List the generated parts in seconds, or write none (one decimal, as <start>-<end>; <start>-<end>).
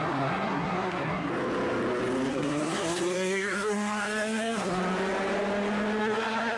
0.0-1.3; 2.3-4.8; 6.0-6.6